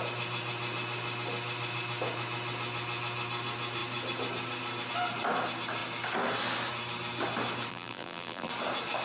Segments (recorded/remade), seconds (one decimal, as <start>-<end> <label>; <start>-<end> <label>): 0.0-7.7 recorded; 7.7-8.5 remade; 8.5-9.0 recorded